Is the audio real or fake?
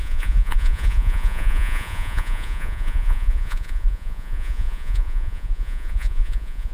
fake